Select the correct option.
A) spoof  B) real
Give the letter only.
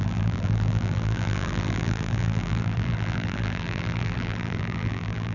A